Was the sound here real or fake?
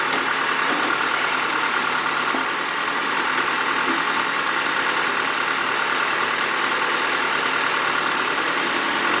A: real